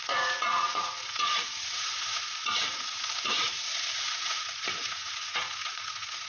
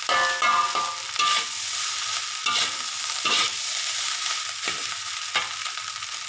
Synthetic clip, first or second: first